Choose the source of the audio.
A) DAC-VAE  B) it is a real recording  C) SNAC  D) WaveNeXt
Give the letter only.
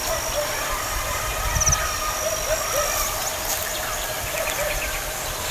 B